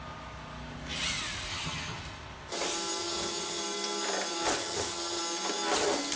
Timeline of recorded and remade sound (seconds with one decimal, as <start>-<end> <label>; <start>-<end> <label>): 0.0-1.5 recorded; 1.5-2.0 remade; 2.0-3.0 recorded; 3.0-3.6 remade; 3.6-4.6 recorded; 4.6-5.2 remade; 5.2-6.2 recorded